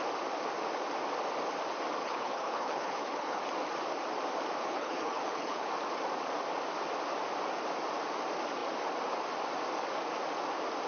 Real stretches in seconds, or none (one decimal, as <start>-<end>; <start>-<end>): 0.0-2.0; 3.4-4.6; 5.7-10.9